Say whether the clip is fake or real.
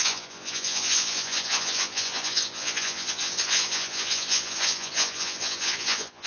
fake